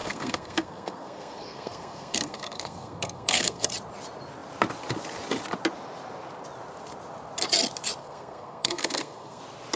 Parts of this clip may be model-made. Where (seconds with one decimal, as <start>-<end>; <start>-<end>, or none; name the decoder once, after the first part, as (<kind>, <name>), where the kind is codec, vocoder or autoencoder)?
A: 0.0-3.7 (codec, SNAC); 8.0-9.4